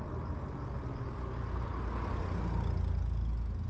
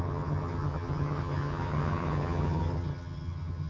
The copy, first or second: second